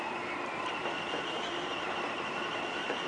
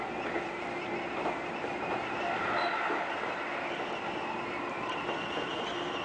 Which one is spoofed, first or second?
first